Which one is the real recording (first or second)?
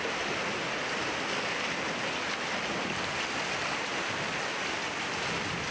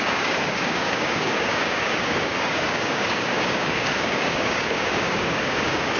first